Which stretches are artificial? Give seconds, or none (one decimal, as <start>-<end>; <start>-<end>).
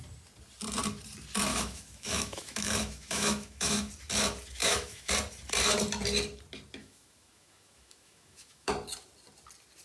1.5-3.9; 4.6-5.1; 6.8-8.7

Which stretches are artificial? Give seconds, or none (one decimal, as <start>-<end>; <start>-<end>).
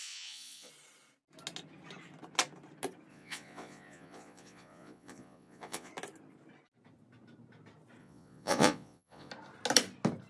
0.0-0.7; 3.1-5.9; 8.0-9.3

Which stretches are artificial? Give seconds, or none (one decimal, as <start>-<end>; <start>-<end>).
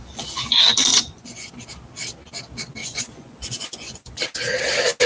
0.9-1.5; 2.8-4.2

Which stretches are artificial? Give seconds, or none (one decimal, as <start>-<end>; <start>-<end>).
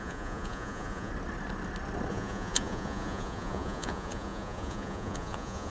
0.0-1.1; 2.1-5.7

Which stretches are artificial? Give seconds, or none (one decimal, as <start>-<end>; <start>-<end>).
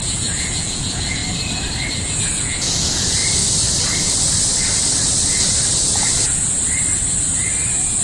0.0-1.2; 2.2-3.2